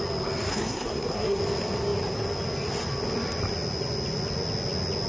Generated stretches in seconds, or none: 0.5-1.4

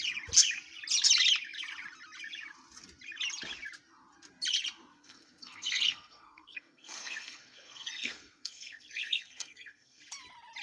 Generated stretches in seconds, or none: 4.9-10.0

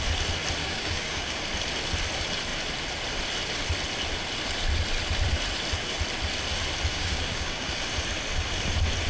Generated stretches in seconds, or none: 0.6-1.4; 6.9-7.7

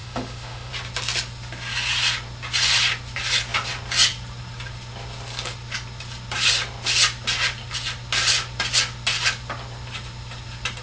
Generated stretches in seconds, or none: 0.0-0.7

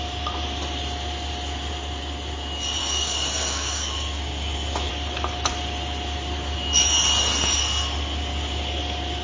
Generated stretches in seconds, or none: 2.8-4.9

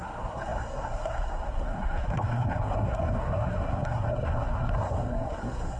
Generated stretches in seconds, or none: 0.0-5.8

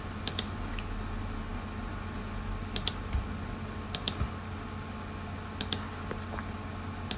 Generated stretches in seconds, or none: none

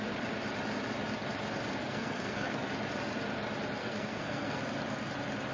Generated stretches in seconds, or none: 1.8-2.7; 3.8-4.6